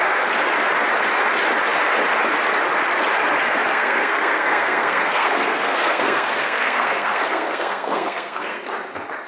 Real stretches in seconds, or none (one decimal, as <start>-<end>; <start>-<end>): 0.0-3.7; 8.6-9.3